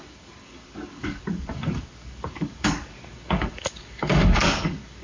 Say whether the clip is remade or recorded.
remade